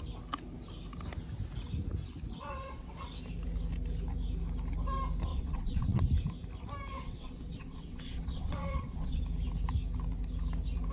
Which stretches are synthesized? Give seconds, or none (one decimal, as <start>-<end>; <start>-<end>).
2.4-2.9; 5.3-6.0; 6.9-9.2